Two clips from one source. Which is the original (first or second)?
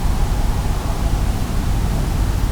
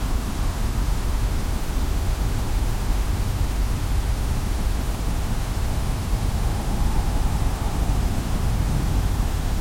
first